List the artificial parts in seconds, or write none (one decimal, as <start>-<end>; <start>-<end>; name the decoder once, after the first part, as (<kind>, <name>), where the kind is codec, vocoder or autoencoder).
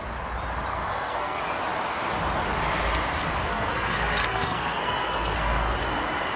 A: 0.7-1.4 (codec, SNAC); 3.5-5.7